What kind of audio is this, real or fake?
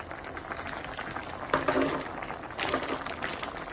real